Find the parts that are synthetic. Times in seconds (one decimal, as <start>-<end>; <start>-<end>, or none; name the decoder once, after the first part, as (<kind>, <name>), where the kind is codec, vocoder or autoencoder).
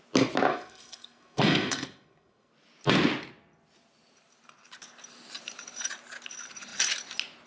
0.5-2.5 (codec, SNAC)